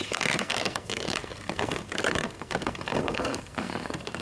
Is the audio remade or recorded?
remade